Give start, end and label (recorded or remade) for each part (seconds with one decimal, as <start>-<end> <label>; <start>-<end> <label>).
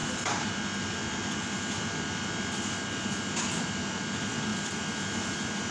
0.0-3.4 recorded; 3.4-4.5 remade; 4.5-5.7 recorded